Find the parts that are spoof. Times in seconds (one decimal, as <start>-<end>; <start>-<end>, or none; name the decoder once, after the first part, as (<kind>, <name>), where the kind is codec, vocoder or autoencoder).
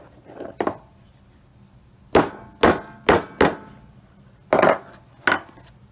none